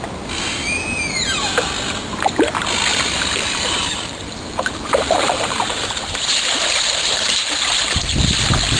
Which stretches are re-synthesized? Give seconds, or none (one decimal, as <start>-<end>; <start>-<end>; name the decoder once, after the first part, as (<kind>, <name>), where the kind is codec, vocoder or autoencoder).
2.9-7.5 (vocoder, BigVGAN v2)